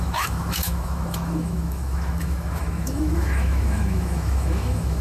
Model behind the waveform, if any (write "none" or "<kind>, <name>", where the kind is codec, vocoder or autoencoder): autoencoder, DAC-VAE